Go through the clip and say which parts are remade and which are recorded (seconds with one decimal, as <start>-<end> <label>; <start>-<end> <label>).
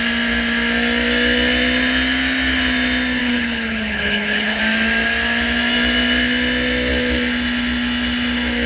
0.0-3.2 recorded; 3.2-4.6 remade; 4.6-8.7 recorded